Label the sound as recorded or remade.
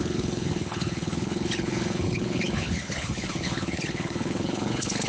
remade